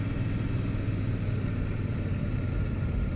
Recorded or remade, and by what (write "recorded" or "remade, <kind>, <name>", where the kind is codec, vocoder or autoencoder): recorded